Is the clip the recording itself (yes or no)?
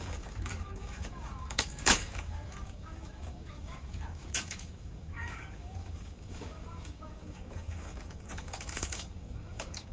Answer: no